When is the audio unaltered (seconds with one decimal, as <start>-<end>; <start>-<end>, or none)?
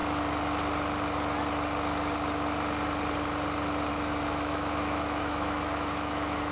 0.0-3.9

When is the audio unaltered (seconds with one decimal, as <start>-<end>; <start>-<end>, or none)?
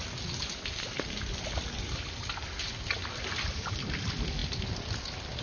0.0-5.4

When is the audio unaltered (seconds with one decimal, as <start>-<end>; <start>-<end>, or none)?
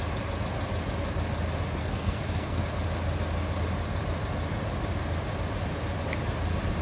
0.0-1.8; 2.6-6.8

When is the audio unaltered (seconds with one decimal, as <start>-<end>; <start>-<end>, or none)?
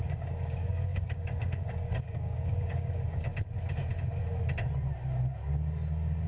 3.3-6.3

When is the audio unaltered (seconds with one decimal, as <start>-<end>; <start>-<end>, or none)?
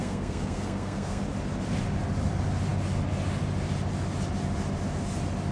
1.2-5.5